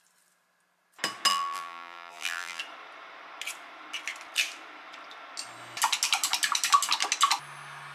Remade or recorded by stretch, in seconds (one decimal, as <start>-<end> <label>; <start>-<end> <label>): 0.0-1.3 recorded; 1.3-2.6 remade; 2.6-7.9 recorded

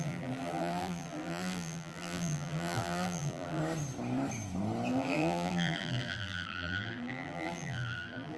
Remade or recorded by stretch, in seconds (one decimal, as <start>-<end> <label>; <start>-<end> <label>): 0.0-3.6 remade; 3.6-4.9 recorded; 4.9-8.4 remade

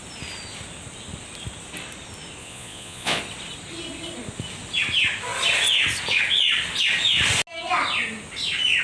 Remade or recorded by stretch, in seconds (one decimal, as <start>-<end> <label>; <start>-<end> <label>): 0.0-2.4 recorded; 2.4-3.2 remade; 3.2-8.8 recorded

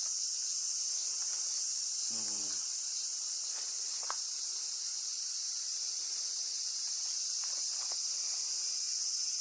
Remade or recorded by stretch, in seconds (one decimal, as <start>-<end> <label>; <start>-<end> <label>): 0.0-9.4 recorded

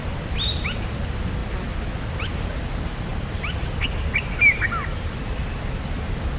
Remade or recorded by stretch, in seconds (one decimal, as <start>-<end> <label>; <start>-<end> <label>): 0.0-6.4 recorded

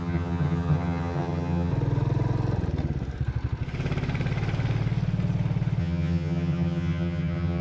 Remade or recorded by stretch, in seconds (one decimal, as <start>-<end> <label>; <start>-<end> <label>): 0.0-1.7 remade; 1.7-5.8 recorded; 5.8-7.6 remade

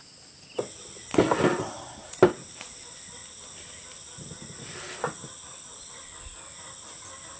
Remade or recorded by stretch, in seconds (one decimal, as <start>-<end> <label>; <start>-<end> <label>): 0.0-1.6 recorded; 1.6-2.1 remade; 2.1-7.4 recorded

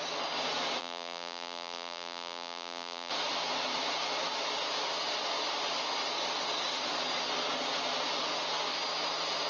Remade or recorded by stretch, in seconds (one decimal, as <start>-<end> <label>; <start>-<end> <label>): 0.0-0.8 recorded; 0.8-3.1 remade; 3.1-9.5 recorded